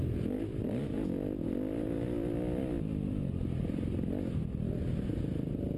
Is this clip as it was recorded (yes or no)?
yes